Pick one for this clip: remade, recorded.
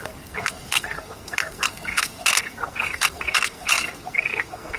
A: remade